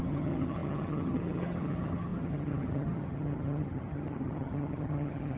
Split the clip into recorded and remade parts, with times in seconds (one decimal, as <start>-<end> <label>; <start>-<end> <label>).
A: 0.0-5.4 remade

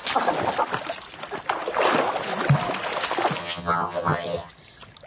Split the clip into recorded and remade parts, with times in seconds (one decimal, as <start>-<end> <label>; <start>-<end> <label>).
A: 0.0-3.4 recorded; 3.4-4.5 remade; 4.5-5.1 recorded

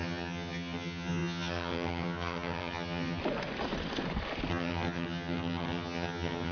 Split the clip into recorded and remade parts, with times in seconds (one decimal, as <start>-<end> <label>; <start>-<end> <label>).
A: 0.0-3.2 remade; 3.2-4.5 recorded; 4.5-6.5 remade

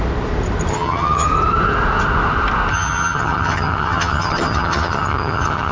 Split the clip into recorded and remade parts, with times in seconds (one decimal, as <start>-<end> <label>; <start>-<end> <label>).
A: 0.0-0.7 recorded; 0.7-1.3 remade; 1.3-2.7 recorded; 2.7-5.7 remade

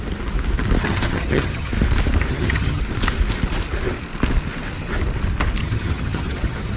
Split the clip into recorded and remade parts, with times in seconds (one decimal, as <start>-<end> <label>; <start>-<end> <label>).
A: 0.0-0.8 recorded; 0.8-1.7 remade; 1.7-2.3 recorded; 2.3-2.8 remade; 2.8-5.6 recorded; 5.6-6.8 remade

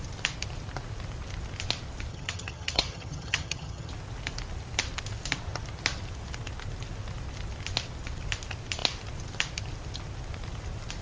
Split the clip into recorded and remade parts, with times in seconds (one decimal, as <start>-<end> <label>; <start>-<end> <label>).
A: 0.0-2.1 recorded; 2.1-3.9 remade; 3.9-11.0 recorded